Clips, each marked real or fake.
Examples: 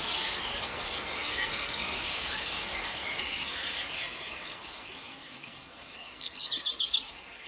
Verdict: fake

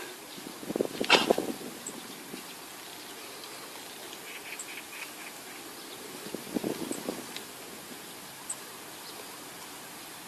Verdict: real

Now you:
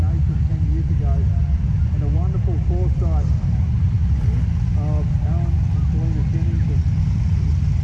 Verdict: real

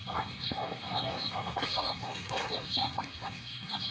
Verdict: fake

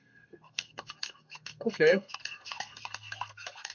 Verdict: fake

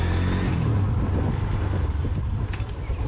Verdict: real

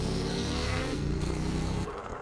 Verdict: fake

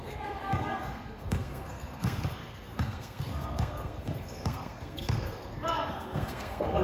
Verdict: fake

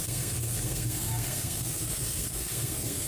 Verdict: fake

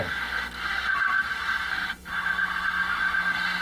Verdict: fake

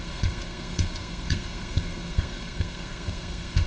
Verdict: fake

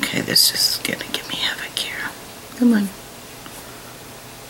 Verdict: real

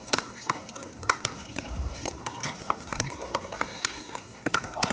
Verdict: fake